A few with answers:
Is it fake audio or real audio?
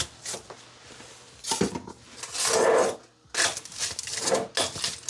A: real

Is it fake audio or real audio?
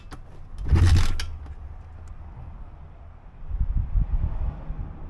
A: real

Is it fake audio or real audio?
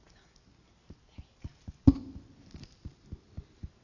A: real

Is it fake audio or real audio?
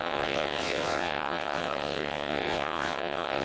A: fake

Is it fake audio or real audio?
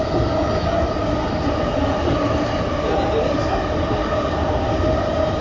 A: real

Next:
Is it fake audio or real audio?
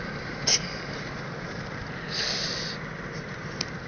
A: real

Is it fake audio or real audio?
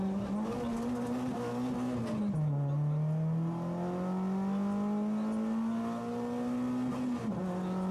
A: real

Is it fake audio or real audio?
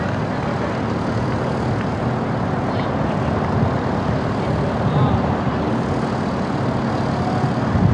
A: real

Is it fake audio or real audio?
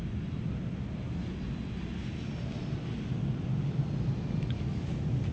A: real